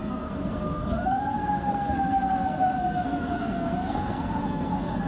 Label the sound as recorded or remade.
remade